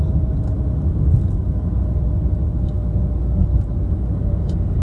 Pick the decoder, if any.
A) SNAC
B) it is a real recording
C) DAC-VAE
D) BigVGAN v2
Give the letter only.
B